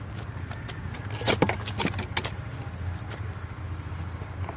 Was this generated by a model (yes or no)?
no